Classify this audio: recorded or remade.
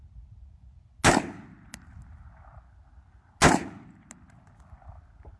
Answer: recorded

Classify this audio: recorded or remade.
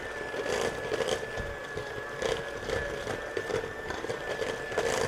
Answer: recorded